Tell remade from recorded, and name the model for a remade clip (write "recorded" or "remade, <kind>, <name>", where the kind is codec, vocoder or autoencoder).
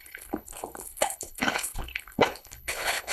remade, codec, HILCodec